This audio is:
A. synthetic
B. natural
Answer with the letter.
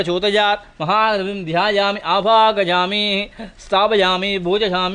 B